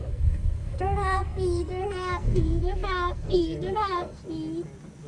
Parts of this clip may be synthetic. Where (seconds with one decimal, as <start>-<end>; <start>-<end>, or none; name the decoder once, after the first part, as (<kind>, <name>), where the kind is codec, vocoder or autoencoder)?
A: 0.0-4.2 (codec, SNAC)